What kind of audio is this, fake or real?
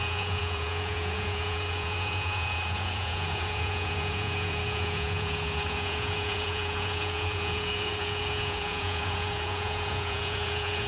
fake